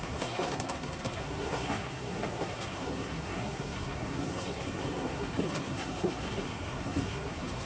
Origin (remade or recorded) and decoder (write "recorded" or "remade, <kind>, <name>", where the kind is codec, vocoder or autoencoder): remade, codec, SNAC